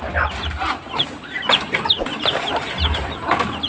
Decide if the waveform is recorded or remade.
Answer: recorded